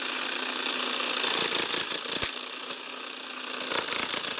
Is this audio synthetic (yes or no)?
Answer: no